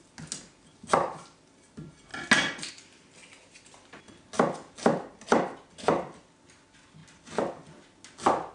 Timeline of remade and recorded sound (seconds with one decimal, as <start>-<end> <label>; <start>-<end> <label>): 0.0-8.5 recorded